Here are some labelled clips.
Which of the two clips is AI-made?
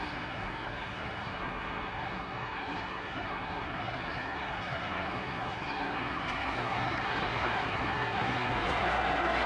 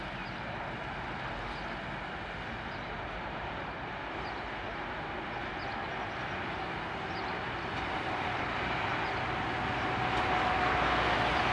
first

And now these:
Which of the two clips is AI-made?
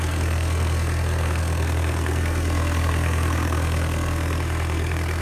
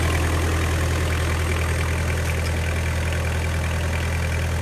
first